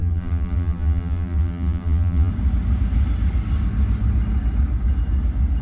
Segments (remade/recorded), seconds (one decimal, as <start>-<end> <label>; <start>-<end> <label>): 0.0-2.3 remade; 2.3-5.6 recorded